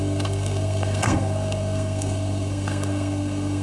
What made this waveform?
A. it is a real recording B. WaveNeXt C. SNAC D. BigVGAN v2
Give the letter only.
C